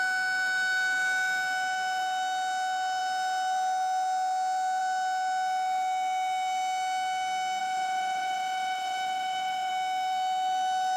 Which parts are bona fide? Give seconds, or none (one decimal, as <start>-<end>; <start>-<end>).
0.0-7.6; 9.7-11.0